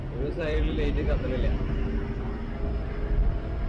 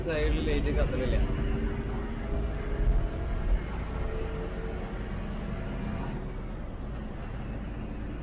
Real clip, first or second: second